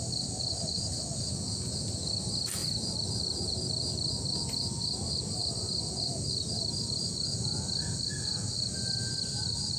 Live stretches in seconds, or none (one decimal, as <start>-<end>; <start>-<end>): 0.0-2.6; 3.5-9.8